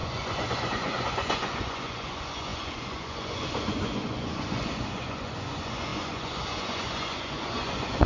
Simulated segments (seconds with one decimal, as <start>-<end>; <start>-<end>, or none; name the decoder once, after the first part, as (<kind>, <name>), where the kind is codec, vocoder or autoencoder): 0.0-8.1 (vocoder, Vocos)